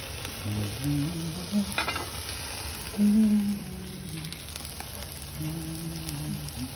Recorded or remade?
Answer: recorded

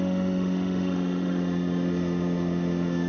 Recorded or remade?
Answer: remade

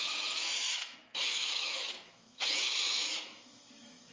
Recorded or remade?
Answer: remade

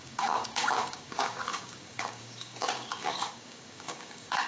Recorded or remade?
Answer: remade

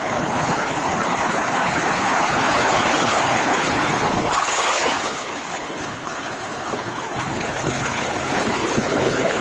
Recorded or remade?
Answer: remade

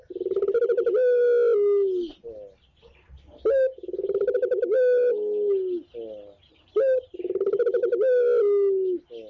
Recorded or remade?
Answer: recorded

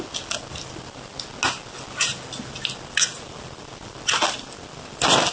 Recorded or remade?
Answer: recorded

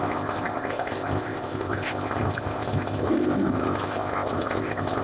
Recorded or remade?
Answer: remade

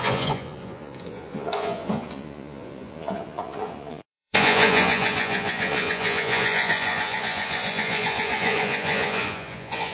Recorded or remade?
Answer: remade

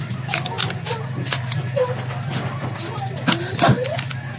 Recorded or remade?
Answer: recorded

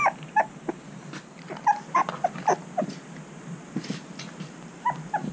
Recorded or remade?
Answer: recorded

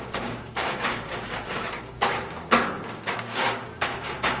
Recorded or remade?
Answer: remade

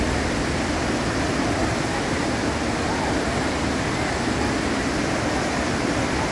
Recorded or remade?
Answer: recorded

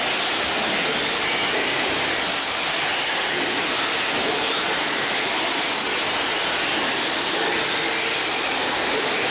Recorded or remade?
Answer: recorded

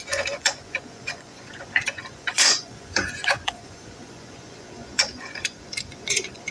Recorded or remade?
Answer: remade